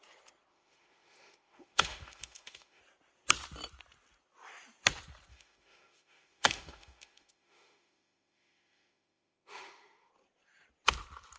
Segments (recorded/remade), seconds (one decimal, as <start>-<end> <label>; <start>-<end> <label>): 0.0-0.5 recorded; 0.5-2.8 remade; 2.8-5.3 recorded; 5.3-10.1 remade; 10.1-11.4 recorded